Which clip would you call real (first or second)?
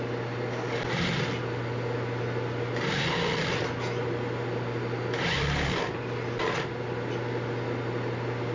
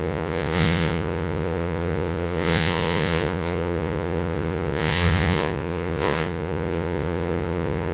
first